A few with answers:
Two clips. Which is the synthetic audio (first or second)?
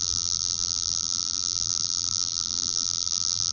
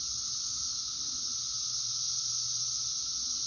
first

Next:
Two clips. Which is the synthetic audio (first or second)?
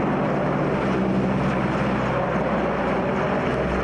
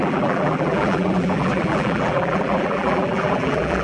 second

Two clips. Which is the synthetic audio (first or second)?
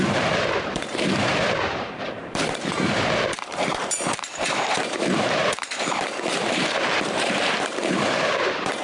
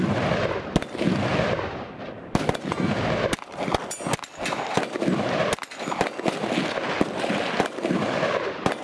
first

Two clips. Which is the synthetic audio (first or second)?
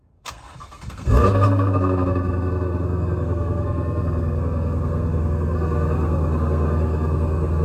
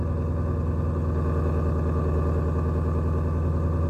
first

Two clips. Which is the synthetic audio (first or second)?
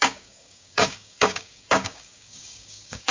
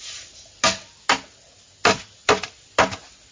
first